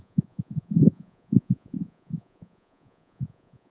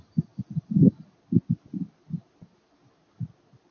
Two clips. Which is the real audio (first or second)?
second